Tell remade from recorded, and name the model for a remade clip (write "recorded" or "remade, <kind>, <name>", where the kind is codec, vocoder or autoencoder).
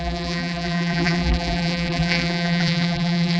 remade, vocoder, BigVGAN v2